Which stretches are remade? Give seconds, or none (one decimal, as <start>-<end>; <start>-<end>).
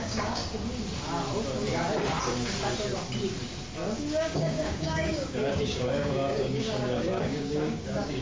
0.0-0.4; 4.2-8.2